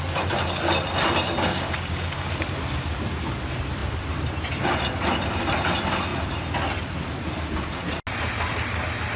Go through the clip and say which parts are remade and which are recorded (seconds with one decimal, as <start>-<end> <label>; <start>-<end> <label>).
0.0-1.5 recorded; 1.5-2.3 remade; 2.3-9.2 recorded